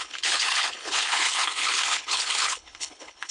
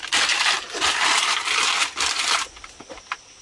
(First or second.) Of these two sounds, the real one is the second